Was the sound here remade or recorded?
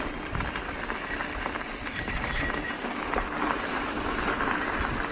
recorded